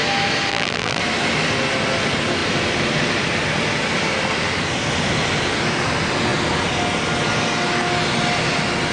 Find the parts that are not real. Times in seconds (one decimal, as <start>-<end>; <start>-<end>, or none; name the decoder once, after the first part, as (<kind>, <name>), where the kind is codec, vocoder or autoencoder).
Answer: 0.5-1.0 (vocoder, BigVGAN v2)